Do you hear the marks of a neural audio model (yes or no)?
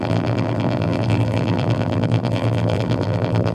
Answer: yes